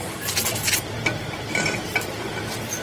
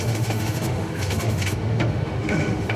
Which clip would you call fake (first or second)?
second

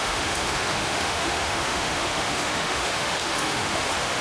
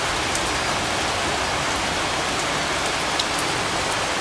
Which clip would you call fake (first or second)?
first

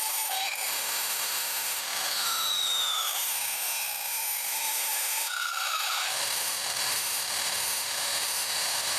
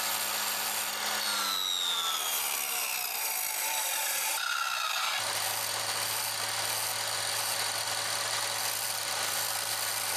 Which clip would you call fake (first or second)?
first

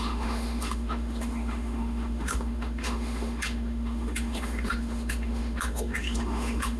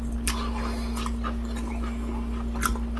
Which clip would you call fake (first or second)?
first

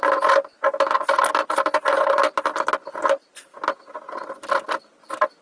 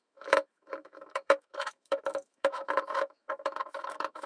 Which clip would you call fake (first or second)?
second